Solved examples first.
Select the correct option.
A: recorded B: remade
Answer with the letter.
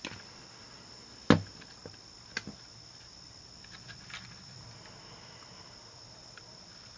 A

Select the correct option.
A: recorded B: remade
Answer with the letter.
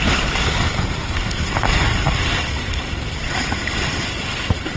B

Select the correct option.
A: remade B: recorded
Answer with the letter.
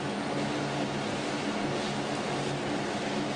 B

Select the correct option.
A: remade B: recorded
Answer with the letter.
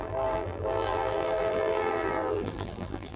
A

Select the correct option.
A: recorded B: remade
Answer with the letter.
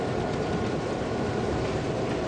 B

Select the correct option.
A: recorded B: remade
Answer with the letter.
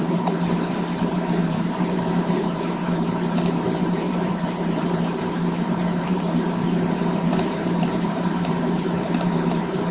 B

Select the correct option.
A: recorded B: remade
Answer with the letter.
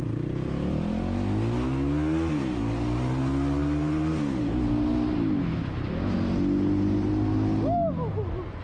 A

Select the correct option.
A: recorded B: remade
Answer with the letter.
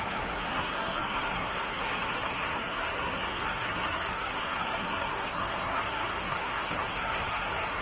B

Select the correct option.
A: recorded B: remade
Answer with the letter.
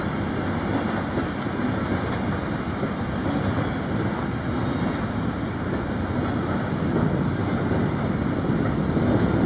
A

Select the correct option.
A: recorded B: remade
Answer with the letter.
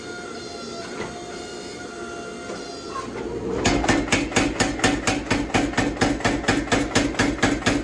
A